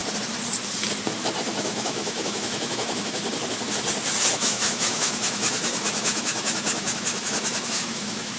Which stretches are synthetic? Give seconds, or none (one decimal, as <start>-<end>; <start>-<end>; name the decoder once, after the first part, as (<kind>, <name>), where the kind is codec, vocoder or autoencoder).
1.5-3.2 (autoencoder, DAC-VAE); 4.3-8.4